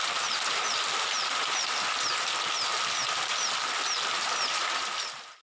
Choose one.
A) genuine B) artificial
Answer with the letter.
A